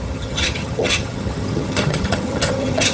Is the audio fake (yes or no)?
yes